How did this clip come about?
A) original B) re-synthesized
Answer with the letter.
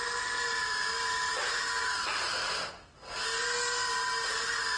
A